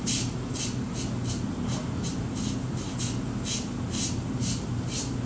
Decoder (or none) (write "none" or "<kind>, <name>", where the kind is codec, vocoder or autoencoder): none